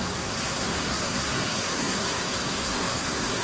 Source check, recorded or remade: remade